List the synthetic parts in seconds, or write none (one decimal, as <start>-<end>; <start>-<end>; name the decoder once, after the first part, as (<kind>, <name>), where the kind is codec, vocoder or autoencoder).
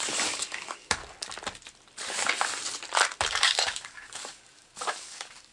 0.0-1.0 (codec, DAC); 3.3-5.5